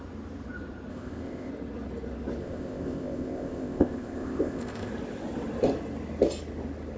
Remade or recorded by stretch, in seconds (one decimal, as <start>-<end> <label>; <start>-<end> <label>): 0.0-0.9 recorded; 0.9-1.5 remade; 1.5-2.4 recorded; 2.4-4.9 remade; 4.9-7.0 recorded